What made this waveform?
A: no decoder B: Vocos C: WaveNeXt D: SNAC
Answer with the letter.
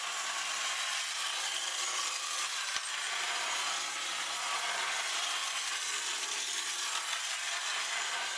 A